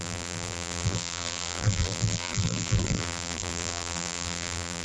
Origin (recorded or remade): remade